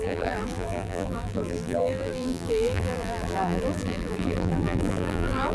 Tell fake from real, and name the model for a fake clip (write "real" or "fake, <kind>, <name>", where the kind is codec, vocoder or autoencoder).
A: fake, vocoder, BigVGAN v2